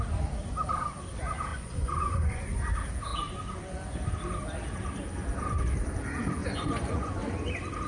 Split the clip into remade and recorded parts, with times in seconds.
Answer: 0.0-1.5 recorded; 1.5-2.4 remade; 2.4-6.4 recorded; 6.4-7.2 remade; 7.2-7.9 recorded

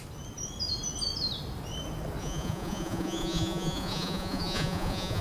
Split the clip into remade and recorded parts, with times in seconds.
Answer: 0.0-2.2 recorded; 2.2-5.2 remade

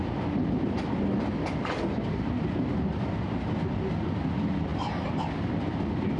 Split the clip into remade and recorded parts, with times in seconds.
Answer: 0.0-6.2 recorded

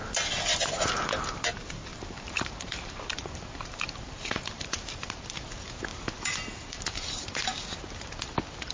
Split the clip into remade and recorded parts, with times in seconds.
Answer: 0.0-1.9 recorded; 1.9-5.2 remade; 5.2-5.9 recorded; 5.9-8.1 remade; 8.1-8.7 recorded

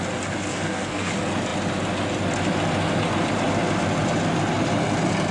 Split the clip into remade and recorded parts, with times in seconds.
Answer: 0.0-0.5 recorded; 0.5-1.1 remade; 1.1-5.3 recorded

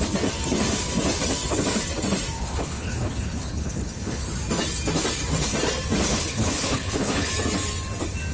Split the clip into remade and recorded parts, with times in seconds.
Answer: 0.0-2.4 recorded; 2.4-4.3 remade; 4.3-6.1 recorded; 6.1-7.3 remade; 7.3-8.3 recorded

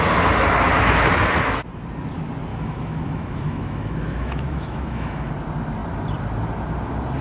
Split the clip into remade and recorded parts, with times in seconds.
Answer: 0.0-2.5 recorded; 2.5-5.3 remade; 5.3-7.2 recorded